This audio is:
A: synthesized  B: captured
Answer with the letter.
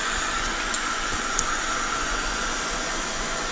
A